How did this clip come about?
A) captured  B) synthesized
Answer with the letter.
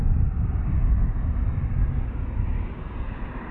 A